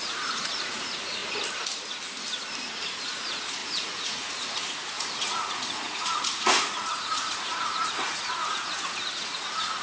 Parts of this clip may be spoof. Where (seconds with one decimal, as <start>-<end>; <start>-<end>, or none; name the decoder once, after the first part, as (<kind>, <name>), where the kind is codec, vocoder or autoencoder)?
0.0-1.2 (vocoder, Vocos); 3.0-9.8